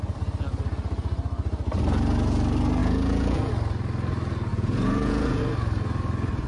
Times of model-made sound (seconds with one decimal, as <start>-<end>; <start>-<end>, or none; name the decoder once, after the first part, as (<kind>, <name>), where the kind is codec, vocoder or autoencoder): 2.8-3.5 (vocoder, Vocos); 4.5-5.4